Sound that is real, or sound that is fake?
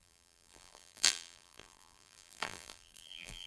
fake